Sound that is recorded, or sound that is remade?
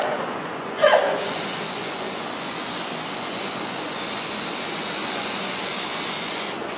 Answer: remade